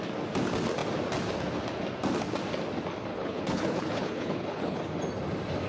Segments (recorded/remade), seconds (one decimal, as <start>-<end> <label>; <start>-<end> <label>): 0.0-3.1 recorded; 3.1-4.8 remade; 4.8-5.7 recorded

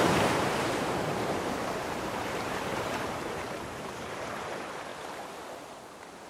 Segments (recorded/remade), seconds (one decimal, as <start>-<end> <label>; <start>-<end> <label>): 0.0-4.9 remade; 4.9-6.3 recorded

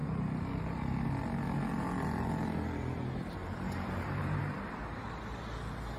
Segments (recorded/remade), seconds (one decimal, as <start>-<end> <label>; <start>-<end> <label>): 0.0-1.1 remade; 1.1-3.4 recorded; 3.4-4.4 remade; 4.4-6.0 recorded